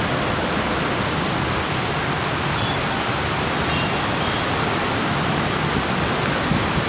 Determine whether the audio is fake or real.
real